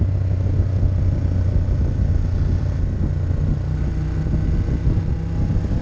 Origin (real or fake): real